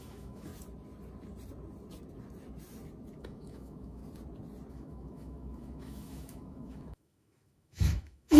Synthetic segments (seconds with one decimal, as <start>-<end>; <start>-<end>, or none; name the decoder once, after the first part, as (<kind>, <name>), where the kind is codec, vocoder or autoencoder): 0.0-0.5 (autoencoder, DAC-VAE); 3.2-4.0; 4.7-8.4